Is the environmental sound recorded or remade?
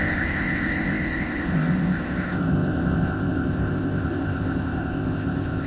remade